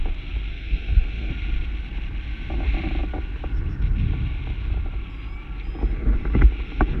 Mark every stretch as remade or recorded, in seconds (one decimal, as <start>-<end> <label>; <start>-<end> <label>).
0.0-0.5 recorded; 0.5-1.3 remade; 1.3-7.0 recorded